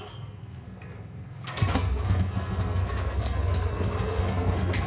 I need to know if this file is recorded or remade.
remade